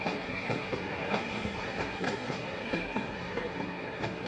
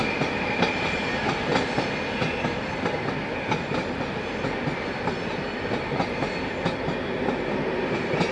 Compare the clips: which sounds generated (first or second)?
first